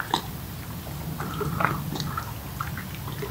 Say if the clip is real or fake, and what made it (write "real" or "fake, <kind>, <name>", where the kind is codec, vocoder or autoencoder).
real